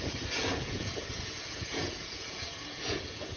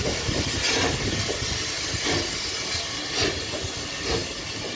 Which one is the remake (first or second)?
first